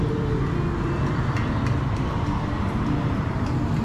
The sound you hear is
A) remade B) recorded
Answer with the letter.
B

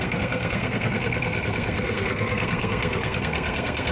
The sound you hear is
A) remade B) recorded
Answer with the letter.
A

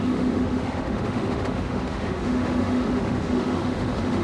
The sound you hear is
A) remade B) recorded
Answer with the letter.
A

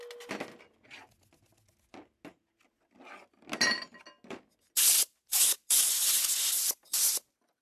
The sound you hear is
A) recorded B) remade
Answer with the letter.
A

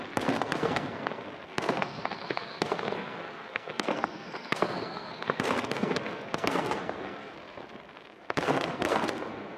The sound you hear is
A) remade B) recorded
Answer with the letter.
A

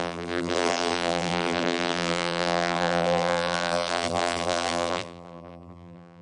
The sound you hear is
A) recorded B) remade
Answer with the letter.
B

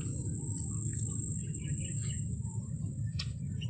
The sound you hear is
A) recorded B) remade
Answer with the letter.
A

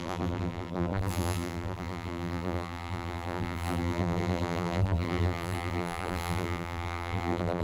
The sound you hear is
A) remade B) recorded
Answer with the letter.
A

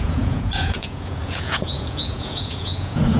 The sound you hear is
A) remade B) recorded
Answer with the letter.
A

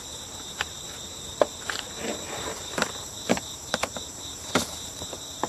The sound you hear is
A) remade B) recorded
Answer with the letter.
A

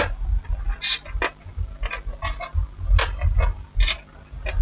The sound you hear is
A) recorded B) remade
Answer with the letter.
A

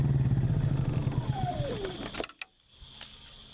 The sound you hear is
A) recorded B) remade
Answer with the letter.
A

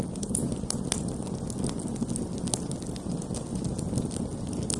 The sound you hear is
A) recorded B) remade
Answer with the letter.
A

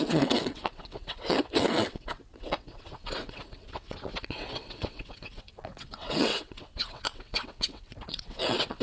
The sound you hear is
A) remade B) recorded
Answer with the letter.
A